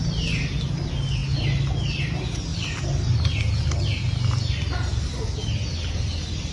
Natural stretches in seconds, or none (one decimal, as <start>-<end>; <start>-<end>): 0.0-6.5